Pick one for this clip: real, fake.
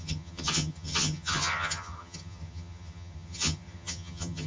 fake